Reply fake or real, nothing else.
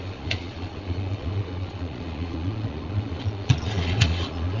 fake